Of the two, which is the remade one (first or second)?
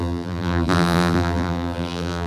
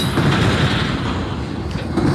first